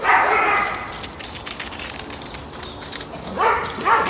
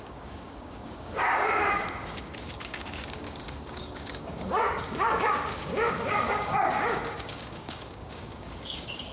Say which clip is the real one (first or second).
first